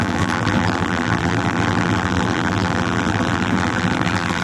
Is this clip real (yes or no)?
no